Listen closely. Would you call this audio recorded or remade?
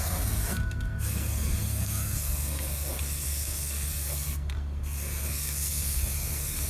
remade